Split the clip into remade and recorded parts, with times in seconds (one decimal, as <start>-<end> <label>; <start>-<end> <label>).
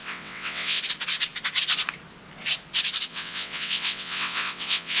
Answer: 0.0-0.8 remade; 0.8-3.1 recorded; 3.1-5.0 remade